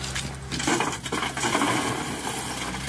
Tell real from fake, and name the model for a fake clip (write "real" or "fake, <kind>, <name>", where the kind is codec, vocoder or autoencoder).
real